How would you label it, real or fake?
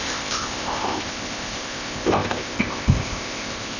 fake